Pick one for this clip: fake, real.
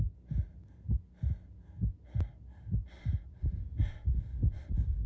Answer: real